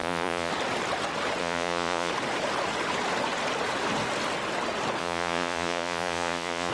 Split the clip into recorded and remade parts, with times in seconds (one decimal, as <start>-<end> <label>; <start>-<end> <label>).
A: 0.0-0.5 remade; 0.5-1.4 recorded; 1.4-2.1 remade; 2.1-5.0 recorded; 5.0-6.7 remade